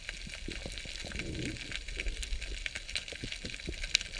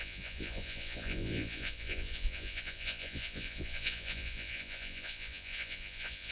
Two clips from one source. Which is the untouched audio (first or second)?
first